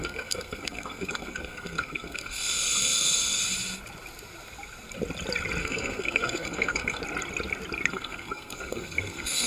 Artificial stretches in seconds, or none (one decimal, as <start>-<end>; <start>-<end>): 0.0-3.4; 5.6-7.0; 7.9-9.5

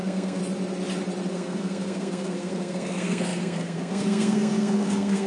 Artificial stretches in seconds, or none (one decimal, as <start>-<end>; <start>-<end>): 0.0-0.4; 1.3-5.3

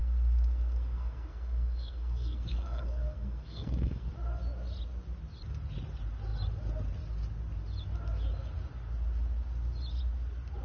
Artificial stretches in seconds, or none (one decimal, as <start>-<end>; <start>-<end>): 0.0-4.1

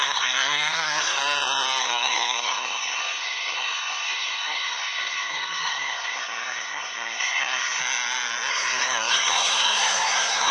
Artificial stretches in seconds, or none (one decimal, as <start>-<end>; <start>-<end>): 0.0-1.2; 1.8-7.8; 8.5-10.5